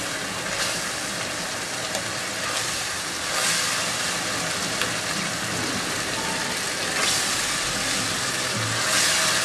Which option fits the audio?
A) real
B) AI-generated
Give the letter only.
A